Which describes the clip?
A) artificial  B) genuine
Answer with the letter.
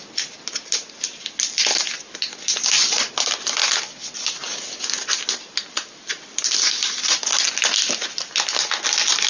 B